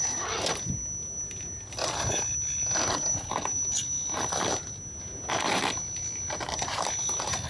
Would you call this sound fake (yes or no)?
no